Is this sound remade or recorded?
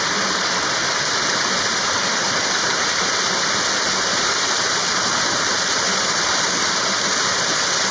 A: recorded